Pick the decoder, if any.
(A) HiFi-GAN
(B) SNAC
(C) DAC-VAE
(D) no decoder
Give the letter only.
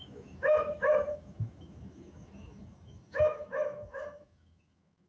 C